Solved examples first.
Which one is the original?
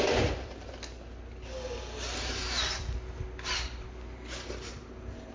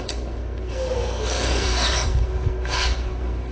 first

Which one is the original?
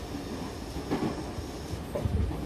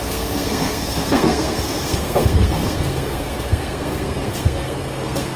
first